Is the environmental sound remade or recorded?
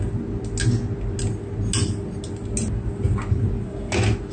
recorded